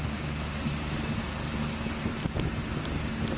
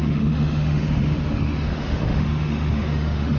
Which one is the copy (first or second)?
second